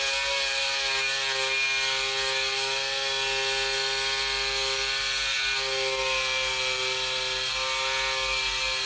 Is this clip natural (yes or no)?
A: yes